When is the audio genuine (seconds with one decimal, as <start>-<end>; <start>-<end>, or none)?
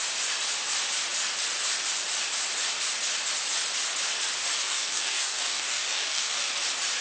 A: 0.0-4.6; 6.5-7.0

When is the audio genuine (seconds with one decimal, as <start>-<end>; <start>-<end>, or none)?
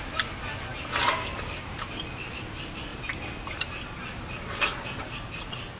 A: 0.0-5.8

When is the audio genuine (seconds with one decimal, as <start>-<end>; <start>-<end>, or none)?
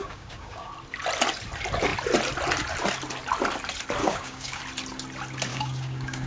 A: 0.7-4.0; 4.6-5.5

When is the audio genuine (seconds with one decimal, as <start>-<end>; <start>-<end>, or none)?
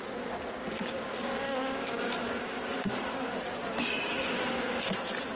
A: 0.0-0.6; 3.4-4.1; 4.9-5.4